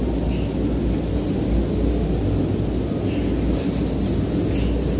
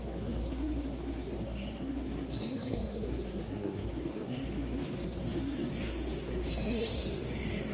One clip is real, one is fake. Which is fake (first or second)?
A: second